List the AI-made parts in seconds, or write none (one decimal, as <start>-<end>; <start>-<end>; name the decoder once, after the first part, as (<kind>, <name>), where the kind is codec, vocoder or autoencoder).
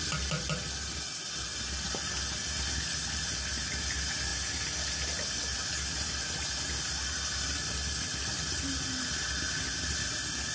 none